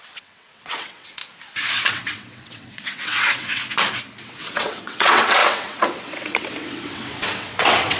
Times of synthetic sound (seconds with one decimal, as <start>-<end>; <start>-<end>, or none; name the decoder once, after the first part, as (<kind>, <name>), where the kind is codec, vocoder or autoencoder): 0.0-1.2 (vocoder, WaveNeXt); 1.9-3.6; 4.2-8.0